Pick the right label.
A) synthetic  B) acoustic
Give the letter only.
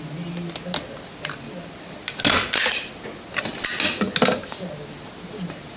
B